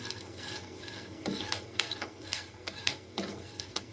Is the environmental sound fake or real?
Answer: fake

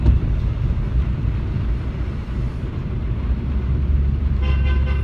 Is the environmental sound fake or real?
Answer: fake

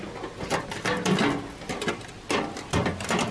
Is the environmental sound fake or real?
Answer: real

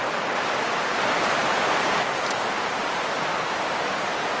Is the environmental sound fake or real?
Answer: real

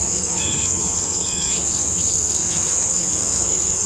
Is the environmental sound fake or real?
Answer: fake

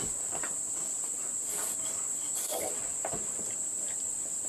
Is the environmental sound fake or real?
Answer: fake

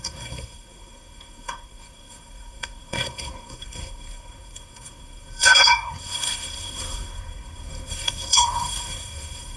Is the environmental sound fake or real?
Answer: fake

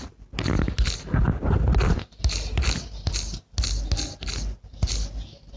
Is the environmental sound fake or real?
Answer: real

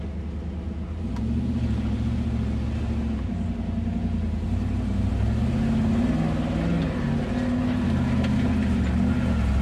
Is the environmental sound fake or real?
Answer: real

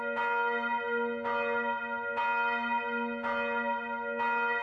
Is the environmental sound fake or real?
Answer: real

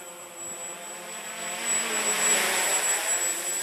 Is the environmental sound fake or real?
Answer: real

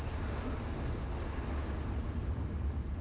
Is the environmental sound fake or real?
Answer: real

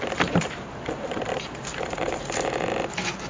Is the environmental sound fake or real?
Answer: fake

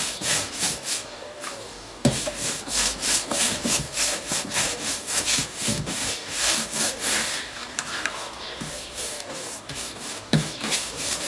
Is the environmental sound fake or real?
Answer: fake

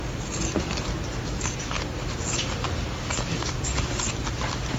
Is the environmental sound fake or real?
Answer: real